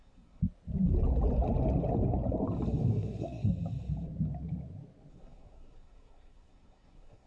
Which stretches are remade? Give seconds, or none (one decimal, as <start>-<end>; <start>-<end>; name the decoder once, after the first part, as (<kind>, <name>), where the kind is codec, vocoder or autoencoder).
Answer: 0.0-0.4 (codec, SNAC); 2.8-3.5; 5.1-7.3